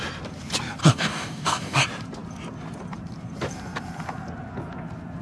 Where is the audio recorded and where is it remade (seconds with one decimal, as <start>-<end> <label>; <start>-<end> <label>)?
0.0-0.8 recorded; 0.8-1.8 remade; 1.8-5.2 recorded